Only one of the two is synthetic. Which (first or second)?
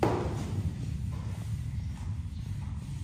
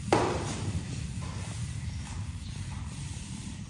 second